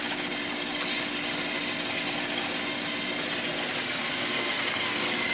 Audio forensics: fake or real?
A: real